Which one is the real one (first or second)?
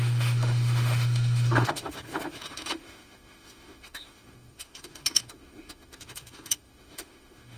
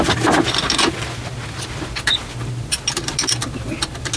second